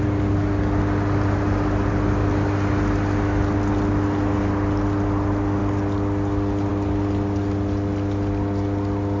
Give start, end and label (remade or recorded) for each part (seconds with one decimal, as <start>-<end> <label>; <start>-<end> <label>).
0.0-9.2 recorded